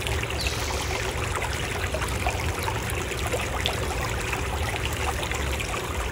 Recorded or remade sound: recorded